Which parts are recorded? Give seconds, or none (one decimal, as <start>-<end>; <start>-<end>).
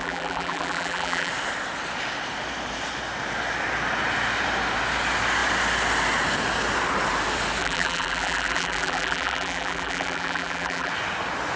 1.3-7.6; 10.9-11.6